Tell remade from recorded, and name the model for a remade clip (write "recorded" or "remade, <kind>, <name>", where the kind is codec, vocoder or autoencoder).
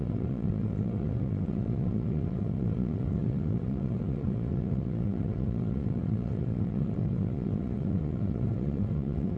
remade, vocoder, WaveNeXt